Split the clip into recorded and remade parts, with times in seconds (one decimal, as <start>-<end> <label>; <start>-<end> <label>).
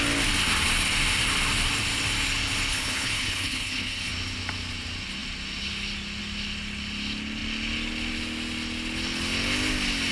0.0-2.7 recorded; 2.7-4.1 remade; 4.1-10.1 recorded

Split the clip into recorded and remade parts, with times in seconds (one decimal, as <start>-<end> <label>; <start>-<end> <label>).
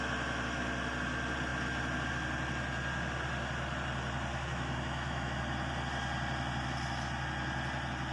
0.0-4.3 recorded; 4.3-5.4 remade; 5.4-8.1 recorded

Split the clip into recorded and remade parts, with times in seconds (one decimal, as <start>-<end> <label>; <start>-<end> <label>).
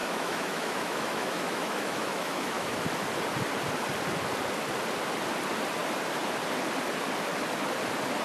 0.0-2.8 remade; 2.8-8.2 recorded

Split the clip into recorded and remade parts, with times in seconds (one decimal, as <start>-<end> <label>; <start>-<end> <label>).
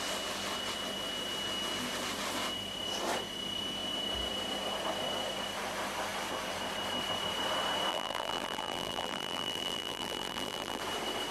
0.0-7.9 recorded; 7.9-10.8 remade; 10.8-11.3 recorded